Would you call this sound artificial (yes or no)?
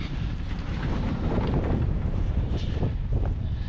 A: yes